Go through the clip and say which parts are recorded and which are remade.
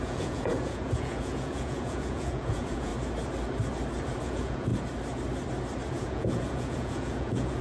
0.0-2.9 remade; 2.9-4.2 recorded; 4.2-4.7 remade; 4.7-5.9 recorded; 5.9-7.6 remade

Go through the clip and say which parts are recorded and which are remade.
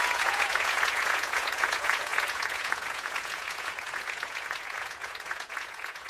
0.0-6.1 remade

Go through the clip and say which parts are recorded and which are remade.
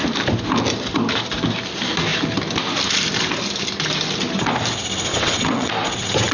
0.0-5.1 recorded; 5.1-5.7 remade; 5.7-6.3 recorded